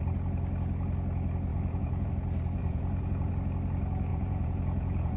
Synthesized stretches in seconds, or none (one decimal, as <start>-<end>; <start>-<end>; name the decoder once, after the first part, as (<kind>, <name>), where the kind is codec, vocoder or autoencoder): 1.5-2.1 (vocoder, Vocos); 2.6-3.3; 4.1-5.2